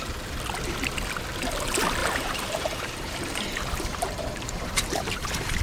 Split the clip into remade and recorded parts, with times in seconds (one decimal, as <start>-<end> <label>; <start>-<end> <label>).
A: 0.0-2.0 recorded; 2.0-5.6 remade